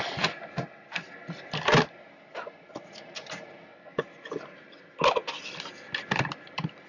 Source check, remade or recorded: recorded